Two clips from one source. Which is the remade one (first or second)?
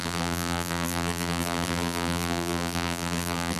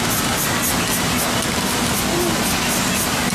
first